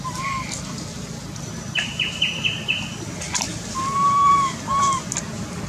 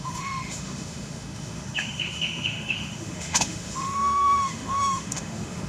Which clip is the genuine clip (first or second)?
first